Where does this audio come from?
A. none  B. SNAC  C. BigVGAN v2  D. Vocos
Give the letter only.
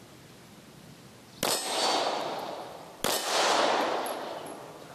A